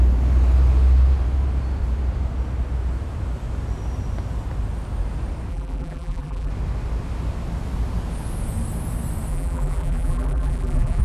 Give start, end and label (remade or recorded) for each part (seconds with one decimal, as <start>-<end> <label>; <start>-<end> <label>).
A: 0.0-5.5 recorded; 5.5-6.5 remade; 6.5-9.3 recorded; 9.3-11.0 remade